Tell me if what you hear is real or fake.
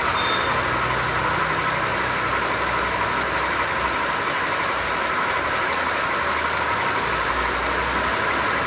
real